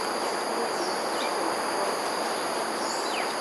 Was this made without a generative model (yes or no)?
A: yes